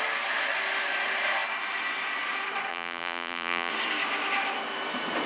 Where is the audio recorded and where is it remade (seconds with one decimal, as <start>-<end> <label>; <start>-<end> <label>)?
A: 0.0-2.7 recorded; 2.7-3.7 remade; 3.7-5.3 recorded

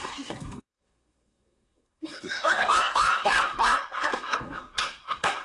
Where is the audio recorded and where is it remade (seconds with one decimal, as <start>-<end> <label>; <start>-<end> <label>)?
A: 0.0-5.4 remade

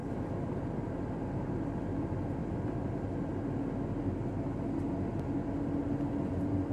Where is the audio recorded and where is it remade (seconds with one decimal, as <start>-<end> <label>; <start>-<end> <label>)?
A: 0.0-1.4 remade; 1.4-2.4 recorded; 2.4-3.3 remade; 3.3-6.7 recorded

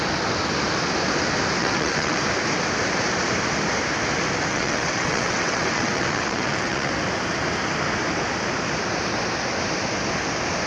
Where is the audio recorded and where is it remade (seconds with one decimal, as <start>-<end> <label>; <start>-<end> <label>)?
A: 0.0-1.6 recorded; 1.6-2.2 remade; 2.2-4.5 recorded; 4.5-6.9 remade; 6.9-10.7 recorded

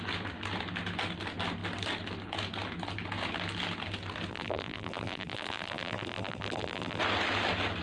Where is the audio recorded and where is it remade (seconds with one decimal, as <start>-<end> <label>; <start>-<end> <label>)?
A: 0.0-4.3 recorded; 4.3-7.0 remade; 7.0-7.8 recorded

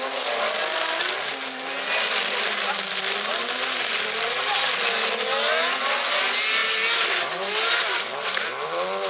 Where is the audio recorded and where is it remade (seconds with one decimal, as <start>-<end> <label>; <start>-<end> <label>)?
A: 0.0-9.1 recorded

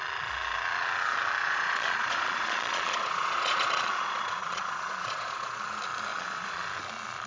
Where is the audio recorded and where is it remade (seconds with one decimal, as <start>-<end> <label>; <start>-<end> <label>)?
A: 0.0-1.4 recorded; 1.4-5.6 remade; 5.6-6.1 recorded; 6.1-6.6 remade; 6.6-7.3 recorded